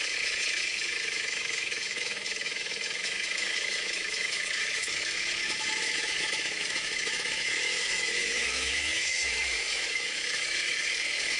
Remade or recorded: remade